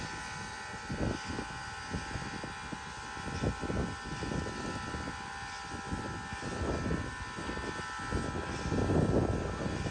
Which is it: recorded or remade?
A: recorded